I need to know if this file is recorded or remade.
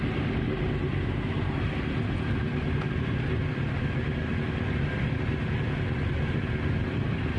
recorded